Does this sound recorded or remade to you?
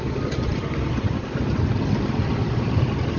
recorded